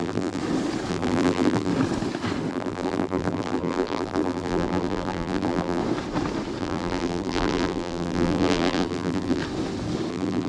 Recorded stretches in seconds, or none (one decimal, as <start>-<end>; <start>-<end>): 0.4-0.9; 1.7-2.5; 5.8-6.6; 9.4-10.1